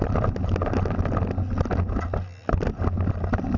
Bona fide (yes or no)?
yes